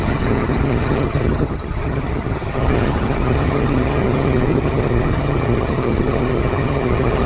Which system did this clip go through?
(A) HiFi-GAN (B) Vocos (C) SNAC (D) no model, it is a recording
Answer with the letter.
A